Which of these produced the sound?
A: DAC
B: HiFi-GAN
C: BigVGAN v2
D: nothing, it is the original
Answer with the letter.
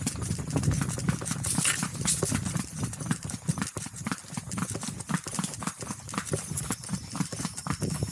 D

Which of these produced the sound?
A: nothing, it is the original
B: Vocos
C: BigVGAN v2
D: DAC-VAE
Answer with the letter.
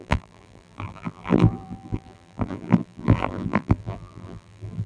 C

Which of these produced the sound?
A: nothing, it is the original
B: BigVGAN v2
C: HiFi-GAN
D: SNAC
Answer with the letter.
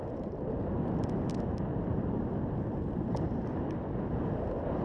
A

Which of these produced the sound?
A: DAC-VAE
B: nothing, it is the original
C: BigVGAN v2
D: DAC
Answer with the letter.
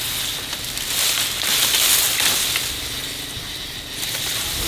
C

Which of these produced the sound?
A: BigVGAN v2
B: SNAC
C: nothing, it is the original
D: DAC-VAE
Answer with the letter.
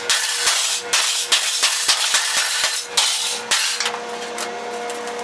C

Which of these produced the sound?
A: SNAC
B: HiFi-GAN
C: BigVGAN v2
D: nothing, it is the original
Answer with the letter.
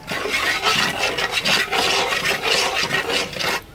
D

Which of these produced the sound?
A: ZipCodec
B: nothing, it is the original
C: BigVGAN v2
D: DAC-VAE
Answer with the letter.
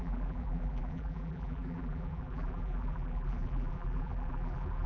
C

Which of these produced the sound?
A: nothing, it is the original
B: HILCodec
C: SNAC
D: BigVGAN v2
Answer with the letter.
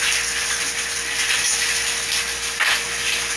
A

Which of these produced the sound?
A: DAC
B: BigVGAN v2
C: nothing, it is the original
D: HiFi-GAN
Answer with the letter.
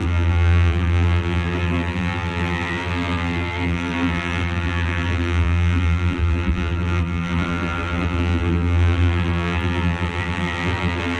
B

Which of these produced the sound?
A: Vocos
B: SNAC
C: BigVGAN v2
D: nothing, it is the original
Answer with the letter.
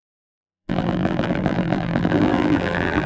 C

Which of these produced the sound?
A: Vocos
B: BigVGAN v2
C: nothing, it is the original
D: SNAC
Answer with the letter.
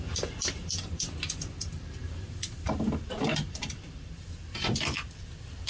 B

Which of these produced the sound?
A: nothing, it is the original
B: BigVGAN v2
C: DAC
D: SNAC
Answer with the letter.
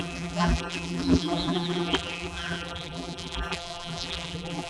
B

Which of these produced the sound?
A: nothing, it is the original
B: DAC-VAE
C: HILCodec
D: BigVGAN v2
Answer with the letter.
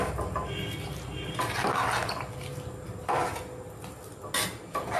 A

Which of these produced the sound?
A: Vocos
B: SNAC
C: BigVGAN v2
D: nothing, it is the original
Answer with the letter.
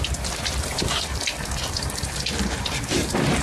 C